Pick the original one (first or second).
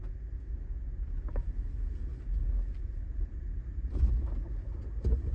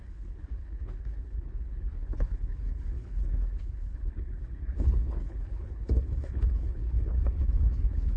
first